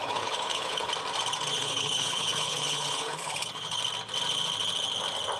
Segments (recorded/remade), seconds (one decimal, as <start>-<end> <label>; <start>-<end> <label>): 0.0-0.9 remade; 0.9-1.6 recorded; 1.6-3.8 remade; 3.8-5.4 recorded